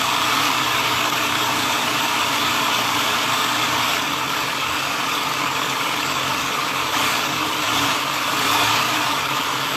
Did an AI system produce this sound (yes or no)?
yes